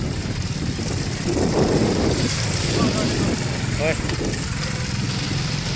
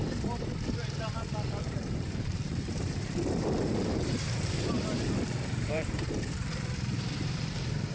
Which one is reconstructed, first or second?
second